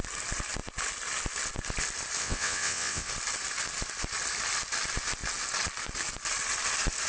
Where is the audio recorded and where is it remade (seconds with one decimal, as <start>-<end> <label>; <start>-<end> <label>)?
0.0-2.2 recorded; 2.2-3.1 remade; 3.1-7.1 recorded